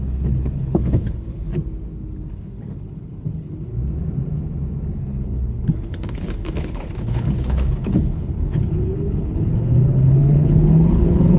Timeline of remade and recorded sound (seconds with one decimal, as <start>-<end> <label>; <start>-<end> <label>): 0.0-1.5 remade; 1.5-2.3 recorded; 2.3-3.7 remade; 3.7-5.0 recorded; 5.0-11.4 remade